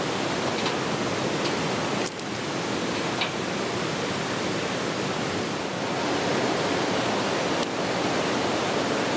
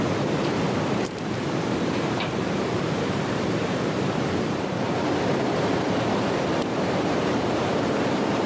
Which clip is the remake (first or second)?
second